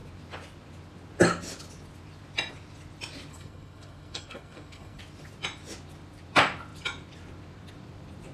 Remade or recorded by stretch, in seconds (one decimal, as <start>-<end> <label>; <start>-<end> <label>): 0.0-3.3 recorded; 3.3-5.0 remade; 5.0-8.3 recorded